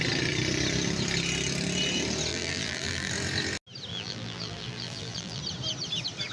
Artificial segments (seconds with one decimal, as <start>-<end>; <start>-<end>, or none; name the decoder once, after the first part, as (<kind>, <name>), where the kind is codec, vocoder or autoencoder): 2.3-3.1 (vocoder, BigVGAN v2); 3.9-5.4